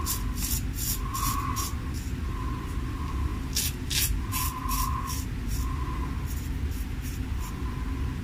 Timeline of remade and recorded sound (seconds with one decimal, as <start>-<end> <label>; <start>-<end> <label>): 0.0-8.2 recorded